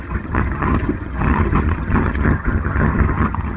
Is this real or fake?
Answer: fake